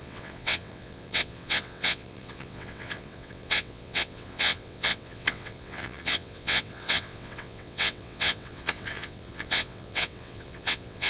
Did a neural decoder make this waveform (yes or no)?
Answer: yes